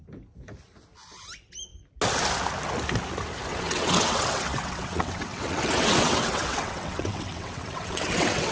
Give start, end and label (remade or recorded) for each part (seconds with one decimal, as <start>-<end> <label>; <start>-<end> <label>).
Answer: 0.0-3.5 recorded; 3.5-8.5 remade